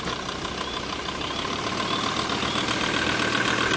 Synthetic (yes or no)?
no